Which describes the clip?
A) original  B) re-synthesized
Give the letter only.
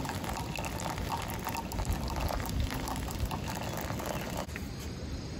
A